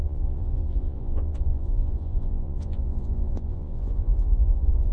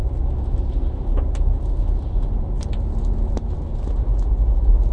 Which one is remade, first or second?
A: first